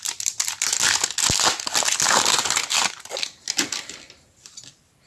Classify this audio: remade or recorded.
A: recorded